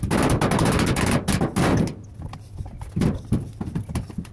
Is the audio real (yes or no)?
yes